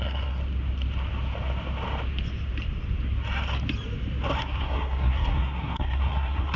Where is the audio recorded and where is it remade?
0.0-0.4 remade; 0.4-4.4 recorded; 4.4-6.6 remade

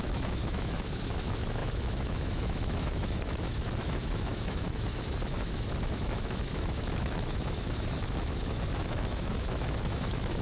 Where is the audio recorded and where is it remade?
0.0-10.4 remade

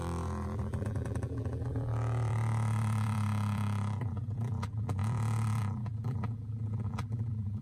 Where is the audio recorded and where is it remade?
0.0-7.6 remade

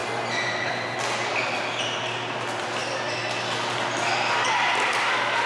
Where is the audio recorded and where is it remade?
0.0-5.5 recorded

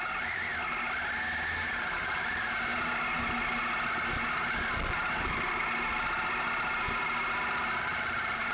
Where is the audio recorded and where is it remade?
0.0-0.5 remade; 0.5-1.5 recorded; 1.5-2.7 remade; 2.7-7.8 recorded; 7.8-8.5 remade

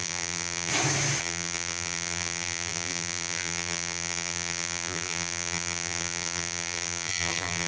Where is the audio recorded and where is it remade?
0.0-0.7 remade; 0.7-1.2 recorded; 1.2-7.7 remade

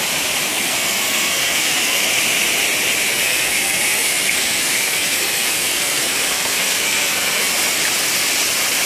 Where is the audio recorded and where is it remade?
0.0-0.5 recorded; 0.5-2.1 remade; 2.1-3.1 recorded; 3.1-7.5 remade; 7.5-8.9 recorded